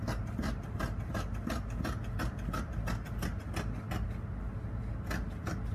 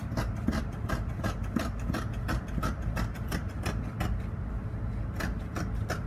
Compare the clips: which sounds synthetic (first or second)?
second